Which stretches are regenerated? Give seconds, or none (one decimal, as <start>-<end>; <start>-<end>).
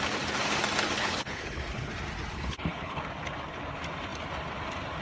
1.0-1.9; 2.3-3.0